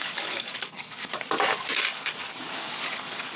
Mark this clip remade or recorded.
remade